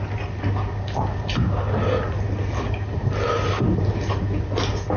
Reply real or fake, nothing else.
real